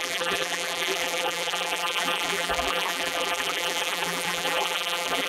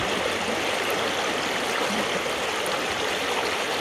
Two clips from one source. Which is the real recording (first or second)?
second